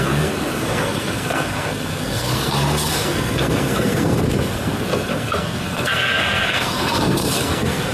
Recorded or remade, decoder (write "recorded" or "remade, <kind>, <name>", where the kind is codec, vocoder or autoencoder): remade, codec, SNAC